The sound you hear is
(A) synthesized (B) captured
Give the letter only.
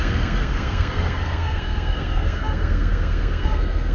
A